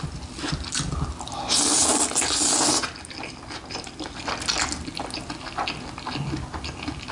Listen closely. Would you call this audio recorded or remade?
recorded